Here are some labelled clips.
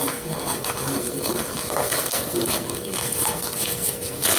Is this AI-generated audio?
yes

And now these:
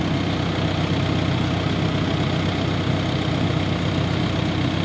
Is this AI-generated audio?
no